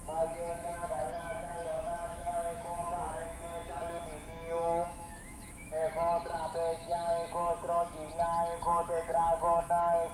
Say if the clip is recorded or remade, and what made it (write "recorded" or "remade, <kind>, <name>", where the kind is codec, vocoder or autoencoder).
remade, autoencoder, DAC-VAE